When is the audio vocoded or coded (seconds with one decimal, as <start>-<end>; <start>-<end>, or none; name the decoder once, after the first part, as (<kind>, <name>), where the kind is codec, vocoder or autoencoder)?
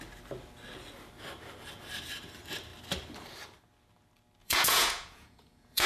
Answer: 4.4-5.9 (vocoder, Vocos)